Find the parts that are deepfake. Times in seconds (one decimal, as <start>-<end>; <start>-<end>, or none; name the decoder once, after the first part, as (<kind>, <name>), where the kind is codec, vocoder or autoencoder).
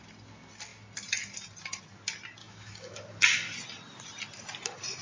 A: 2.4-3.0 (autoencoder, DAC-VAE)